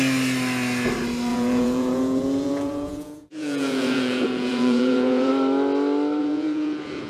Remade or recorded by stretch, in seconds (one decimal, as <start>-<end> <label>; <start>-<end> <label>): 0.0-1.3 recorded; 1.3-5.3 remade; 5.3-6.2 recorded; 6.2-7.1 remade